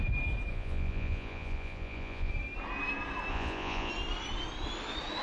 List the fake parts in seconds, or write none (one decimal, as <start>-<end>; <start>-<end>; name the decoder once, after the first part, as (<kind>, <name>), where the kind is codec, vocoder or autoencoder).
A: 0.5-2.3 (vocoder, Vocos); 3.3-3.9